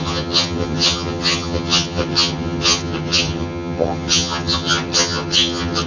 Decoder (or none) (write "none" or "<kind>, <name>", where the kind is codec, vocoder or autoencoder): vocoder, HiFi-GAN